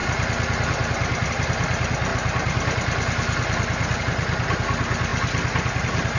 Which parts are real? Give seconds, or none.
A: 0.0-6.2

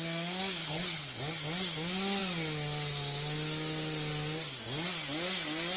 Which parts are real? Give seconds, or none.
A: 0.0-0.6; 1.2-5.8

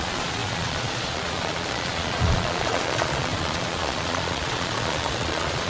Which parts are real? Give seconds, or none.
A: none

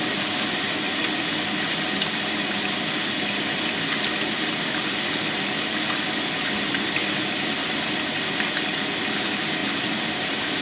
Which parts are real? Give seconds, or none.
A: 0.0-10.6

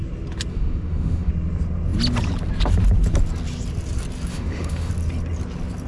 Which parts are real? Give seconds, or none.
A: 0.0-0.5; 1.3-4.3; 4.9-5.9